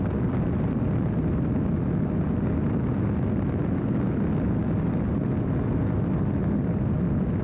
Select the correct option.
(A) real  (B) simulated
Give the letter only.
A